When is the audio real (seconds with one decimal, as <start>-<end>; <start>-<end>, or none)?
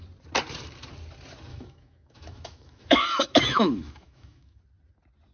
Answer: 0.0-1.5; 4.6-5.3